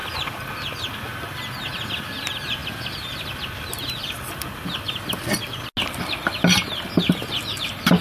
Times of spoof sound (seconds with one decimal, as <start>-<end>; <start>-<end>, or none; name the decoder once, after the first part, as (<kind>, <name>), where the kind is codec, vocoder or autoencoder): none